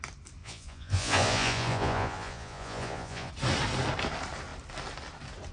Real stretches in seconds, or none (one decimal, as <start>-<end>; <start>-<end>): 0.0-0.4; 3.3-5.5